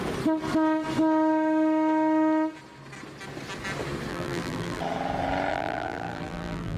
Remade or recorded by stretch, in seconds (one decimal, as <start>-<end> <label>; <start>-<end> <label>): 0.0-4.1 recorded; 4.1-4.8 remade; 4.8-5.5 recorded; 5.5-6.8 remade

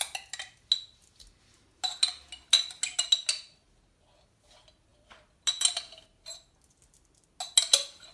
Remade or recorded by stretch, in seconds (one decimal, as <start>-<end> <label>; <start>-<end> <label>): 0.0-8.1 recorded